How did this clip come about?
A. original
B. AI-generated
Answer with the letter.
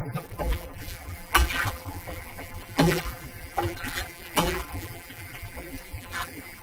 B